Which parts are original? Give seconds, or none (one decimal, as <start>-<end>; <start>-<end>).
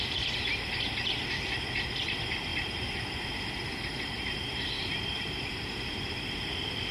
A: 0.0-6.9